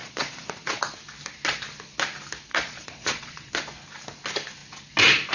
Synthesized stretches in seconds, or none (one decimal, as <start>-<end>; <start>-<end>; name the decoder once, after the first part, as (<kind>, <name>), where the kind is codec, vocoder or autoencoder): 0.0-0.8 (vocoder, Vocos); 2.5-3.5